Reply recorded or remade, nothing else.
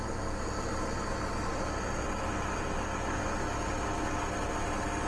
recorded